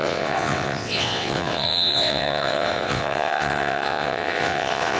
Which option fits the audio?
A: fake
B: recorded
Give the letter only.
A